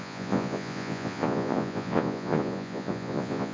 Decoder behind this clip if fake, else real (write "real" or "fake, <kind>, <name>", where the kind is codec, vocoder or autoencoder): fake, vocoder, Vocos